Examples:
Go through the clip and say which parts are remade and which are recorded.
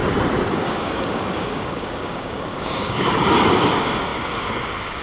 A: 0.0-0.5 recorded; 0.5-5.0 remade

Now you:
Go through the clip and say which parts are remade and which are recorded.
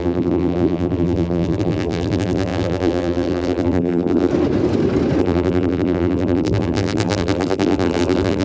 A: 0.0-4.3 remade; 4.3-5.2 recorded; 5.2-8.4 remade